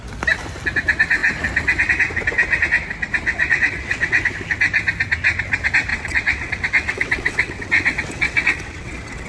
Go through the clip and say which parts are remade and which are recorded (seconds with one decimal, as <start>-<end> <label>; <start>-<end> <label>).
0.0-3.3 recorded; 3.3-4.2 remade; 4.2-5.9 recorded; 5.9-9.3 remade